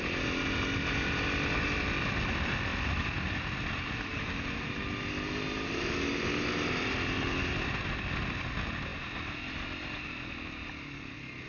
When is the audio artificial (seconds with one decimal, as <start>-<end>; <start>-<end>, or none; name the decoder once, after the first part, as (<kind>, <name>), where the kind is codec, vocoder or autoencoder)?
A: none